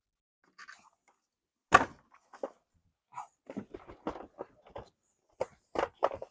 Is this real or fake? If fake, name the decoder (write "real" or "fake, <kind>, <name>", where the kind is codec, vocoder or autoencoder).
real